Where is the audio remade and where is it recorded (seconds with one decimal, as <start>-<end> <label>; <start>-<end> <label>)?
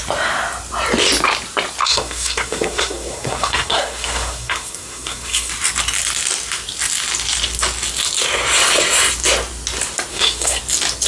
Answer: 0.0-1.8 recorded; 1.8-5.5 remade; 5.5-10.1 recorded; 10.1-10.6 remade; 10.6-11.1 recorded